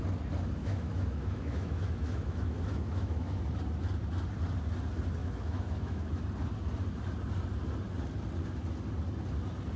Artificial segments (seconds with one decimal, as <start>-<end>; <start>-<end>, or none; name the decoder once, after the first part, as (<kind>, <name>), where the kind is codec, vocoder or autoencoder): 0.6-3.4 (autoencoder, DAC-VAE); 5.2-6.2